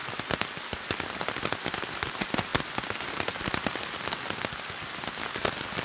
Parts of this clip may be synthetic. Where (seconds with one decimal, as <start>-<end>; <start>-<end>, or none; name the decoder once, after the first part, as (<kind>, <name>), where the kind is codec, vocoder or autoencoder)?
none